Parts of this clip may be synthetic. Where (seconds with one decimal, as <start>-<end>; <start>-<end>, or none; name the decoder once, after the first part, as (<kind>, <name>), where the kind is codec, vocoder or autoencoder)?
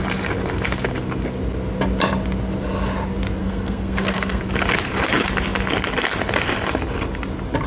3.4-4.4 (codec, SNAC)